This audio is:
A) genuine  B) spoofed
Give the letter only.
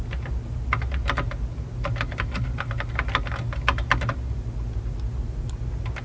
A